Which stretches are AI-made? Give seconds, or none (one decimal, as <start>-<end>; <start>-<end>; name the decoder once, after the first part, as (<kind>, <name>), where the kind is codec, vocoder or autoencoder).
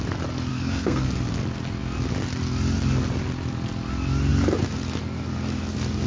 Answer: 0.5-1.1 (codec, SNAC)